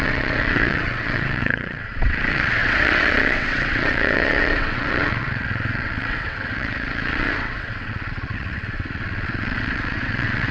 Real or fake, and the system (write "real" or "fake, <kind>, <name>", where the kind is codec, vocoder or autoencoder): fake, vocoder, WaveNeXt